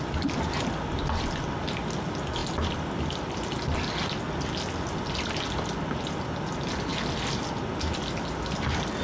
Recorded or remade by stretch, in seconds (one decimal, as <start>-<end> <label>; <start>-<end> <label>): 0.0-9.0 recorded